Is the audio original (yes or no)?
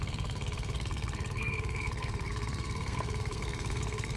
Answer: no